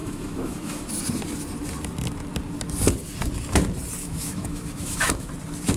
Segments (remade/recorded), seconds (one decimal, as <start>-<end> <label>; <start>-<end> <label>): 0.0-0.9 remade; 0.9-4.0 recorded; 4.0-5.3 remade; 5.3-5.8 recorded